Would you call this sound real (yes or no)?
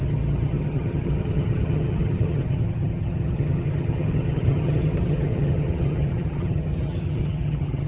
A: no